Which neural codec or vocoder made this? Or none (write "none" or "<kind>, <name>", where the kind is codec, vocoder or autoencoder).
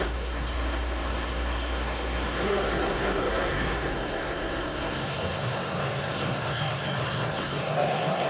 codec, SNAC